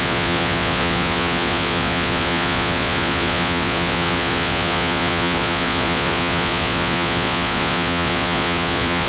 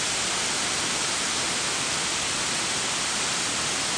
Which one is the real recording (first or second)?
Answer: second